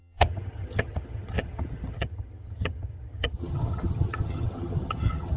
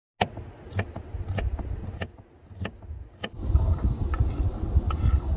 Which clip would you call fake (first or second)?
first